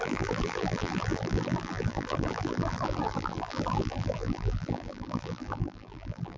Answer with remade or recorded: remade